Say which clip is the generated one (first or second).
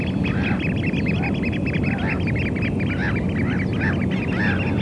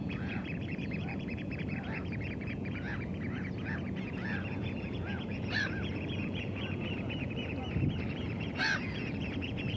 second